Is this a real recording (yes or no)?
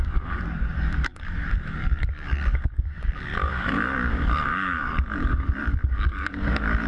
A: no